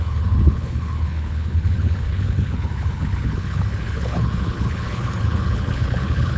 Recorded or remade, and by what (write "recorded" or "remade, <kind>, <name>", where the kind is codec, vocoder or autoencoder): remade, codec, HILCodec